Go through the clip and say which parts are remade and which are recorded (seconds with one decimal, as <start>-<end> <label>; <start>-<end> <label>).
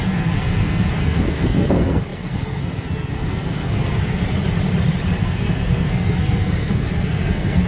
0.0-4.2 remade; 4.2-5.2 recorded; 5.2-7.7 remade